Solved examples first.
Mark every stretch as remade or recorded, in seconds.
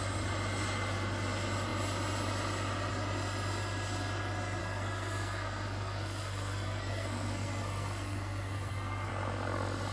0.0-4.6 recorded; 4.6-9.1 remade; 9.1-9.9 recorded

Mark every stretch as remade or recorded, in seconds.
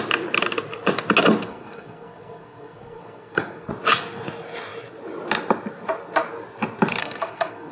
0.0-1.5 recorded; 1.5-3.7 remade; 3.7-7.0 recorded; 7.0-7.7 remade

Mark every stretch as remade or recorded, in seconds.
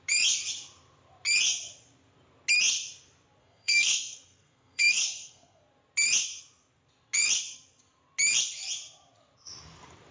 0.0-3.4 recorded; 3.4-5.6 remade; 5.6-10.1 recorded